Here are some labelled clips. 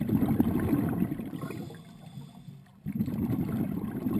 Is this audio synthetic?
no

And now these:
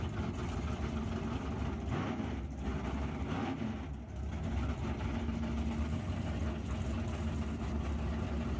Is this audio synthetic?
no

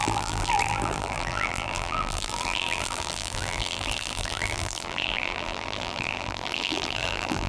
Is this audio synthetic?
yes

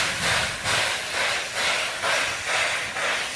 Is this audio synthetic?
yes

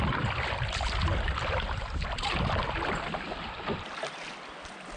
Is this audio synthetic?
no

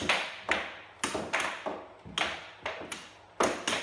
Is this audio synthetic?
no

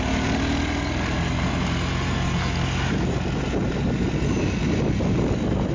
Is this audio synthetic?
no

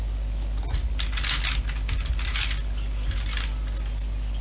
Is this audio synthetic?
no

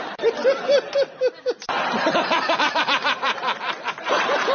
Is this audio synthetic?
yes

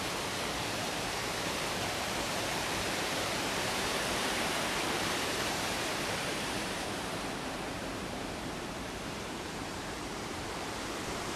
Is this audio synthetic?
yes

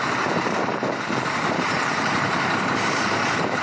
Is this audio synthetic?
yes